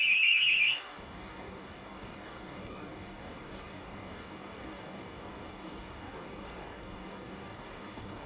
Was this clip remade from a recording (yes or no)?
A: yes